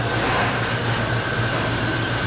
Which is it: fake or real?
real